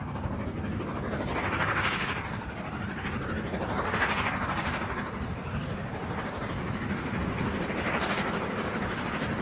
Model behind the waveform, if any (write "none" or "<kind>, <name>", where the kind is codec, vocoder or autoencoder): none